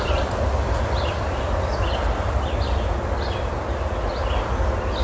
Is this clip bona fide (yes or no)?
yes